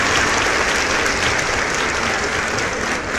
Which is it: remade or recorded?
recorded